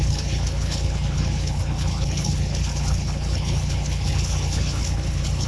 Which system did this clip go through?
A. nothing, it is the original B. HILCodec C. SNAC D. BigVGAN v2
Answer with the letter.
B